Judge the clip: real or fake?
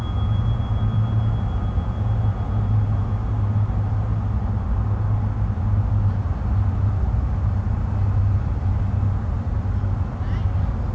real